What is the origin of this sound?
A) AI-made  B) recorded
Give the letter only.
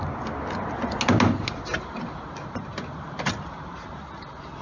B